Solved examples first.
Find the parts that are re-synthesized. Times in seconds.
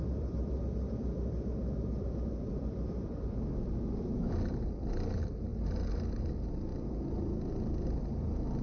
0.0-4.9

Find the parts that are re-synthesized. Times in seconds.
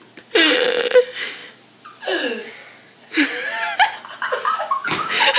none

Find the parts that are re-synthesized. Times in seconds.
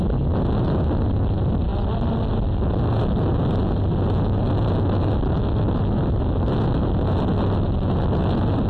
none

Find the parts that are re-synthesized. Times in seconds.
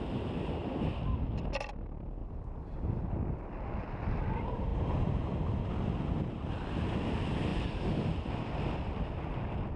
2.2-3.0; 7.5-8.3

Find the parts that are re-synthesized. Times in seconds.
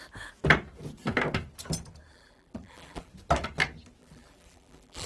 2.1-3.1; 4.0-5.1